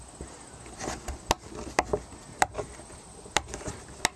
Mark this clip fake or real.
real